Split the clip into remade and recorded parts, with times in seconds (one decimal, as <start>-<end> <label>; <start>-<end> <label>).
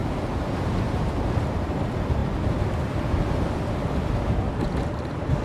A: 0.0-1.8 remade; 1.8-5.4 recorded